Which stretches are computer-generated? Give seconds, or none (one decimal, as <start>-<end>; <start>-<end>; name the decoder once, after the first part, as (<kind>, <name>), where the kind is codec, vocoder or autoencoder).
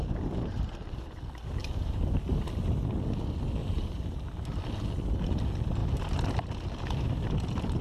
1.6-2.2 (vocoder, BigVGAN v2); 3.6-4.3